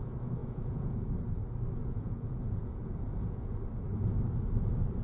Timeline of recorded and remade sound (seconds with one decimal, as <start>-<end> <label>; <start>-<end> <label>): 0.0-0.4 recorded; 0.4-1.1 remade; 1.1-1.8 recorded; 1.8-3.5 remade; 3.5-5.0 recorded